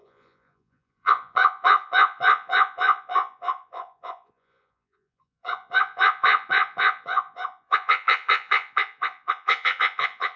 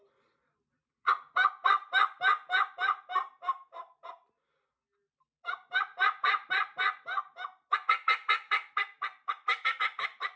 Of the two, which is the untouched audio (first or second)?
second